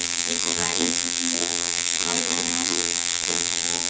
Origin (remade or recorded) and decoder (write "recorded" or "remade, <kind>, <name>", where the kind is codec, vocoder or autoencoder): remade, vocoder, BigVGAN v2